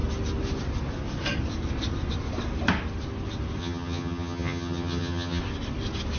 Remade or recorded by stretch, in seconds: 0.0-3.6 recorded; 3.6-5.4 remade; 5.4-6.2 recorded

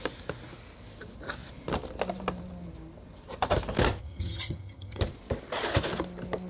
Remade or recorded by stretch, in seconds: 0.0-4.0 recorded; 4.0-5.0 remade; 5.0-6.5 recorded

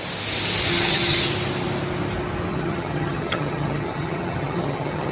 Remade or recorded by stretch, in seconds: 0.0-0.7 recorded; 0.7-1.3 remade; 1.3-2.5 recorded; 2.5-5.1 remade